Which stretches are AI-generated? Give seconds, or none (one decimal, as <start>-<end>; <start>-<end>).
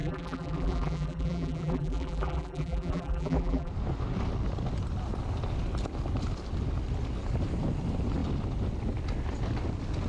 0.0-3.7